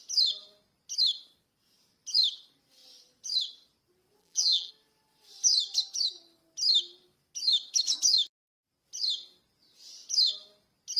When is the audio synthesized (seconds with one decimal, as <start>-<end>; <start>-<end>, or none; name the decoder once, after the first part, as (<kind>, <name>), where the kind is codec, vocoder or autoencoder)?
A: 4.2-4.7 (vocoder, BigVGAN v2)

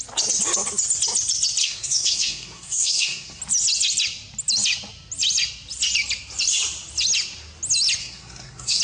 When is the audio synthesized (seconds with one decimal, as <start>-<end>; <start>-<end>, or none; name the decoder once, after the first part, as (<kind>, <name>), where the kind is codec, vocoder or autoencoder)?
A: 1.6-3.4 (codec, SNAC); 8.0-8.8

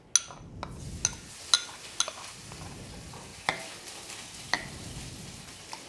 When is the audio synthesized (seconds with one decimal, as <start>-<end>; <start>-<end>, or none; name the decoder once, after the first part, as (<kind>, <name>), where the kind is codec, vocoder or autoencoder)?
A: none

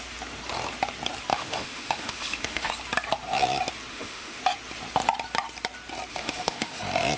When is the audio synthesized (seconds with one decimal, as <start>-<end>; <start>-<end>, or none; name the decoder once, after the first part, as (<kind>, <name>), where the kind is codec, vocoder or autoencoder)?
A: 1.3-2.7 (autoencoder, DAC-VAE); 3.9-4.4; 6.1-6.8

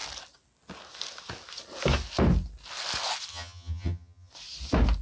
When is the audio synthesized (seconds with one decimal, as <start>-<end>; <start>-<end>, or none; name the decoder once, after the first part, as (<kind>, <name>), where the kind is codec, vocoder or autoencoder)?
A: 3.3-4.3 (vocoder, HiFi-GAN)

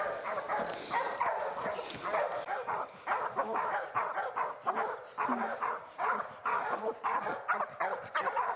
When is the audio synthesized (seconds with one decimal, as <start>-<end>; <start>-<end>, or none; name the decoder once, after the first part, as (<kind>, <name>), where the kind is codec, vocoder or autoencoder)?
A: none

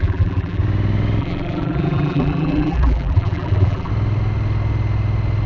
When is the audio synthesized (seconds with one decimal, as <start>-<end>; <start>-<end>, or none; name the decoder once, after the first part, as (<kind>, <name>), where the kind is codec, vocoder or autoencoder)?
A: 0.0-0.6 (vocoder, BigVGAN v2); 1.2-3.9